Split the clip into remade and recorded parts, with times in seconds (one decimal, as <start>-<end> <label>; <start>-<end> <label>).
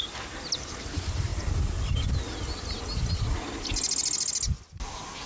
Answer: 0.0-5.3 recorded